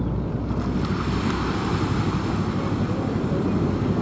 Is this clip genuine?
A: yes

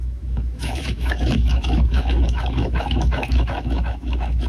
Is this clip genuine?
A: no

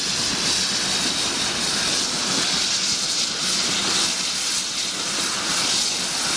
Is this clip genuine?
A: yes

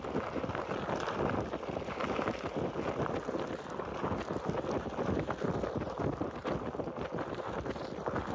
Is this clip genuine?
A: yes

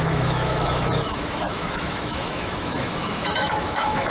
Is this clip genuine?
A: no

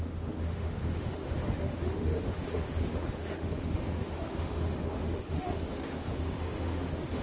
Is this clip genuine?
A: no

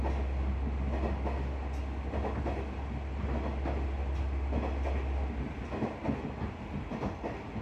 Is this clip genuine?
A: yes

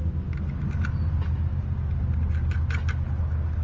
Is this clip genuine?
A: yes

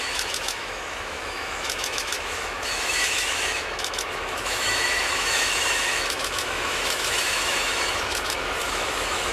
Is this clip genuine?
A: no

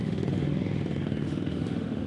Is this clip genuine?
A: no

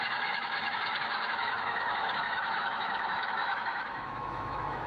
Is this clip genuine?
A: no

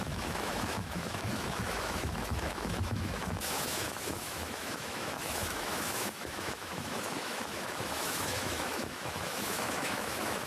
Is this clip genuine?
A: no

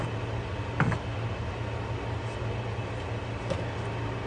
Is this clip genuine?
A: yes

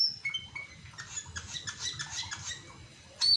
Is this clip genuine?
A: yes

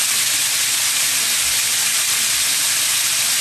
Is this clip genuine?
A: yes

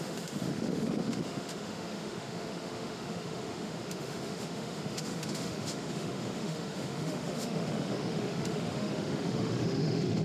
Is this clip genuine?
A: no